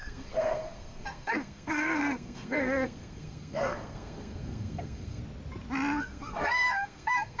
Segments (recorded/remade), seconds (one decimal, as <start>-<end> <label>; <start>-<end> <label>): 0.0-5.2 remade; 5.2-6.0 recorded; 6.0-7.4 remade